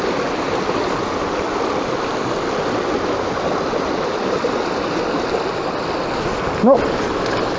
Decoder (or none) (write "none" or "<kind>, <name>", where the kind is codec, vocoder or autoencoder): none